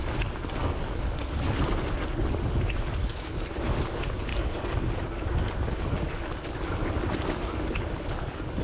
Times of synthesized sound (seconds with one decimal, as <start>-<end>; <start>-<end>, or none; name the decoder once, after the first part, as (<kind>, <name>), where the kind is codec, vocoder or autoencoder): 0.6-1.2 (codec, DAC); 4.3-4.9